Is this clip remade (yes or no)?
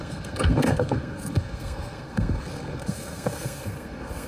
yes